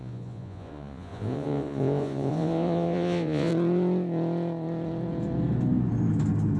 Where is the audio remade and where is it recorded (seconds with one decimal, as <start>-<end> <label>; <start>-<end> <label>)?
0.0-3.5 remade; 3.5-6.6 recorded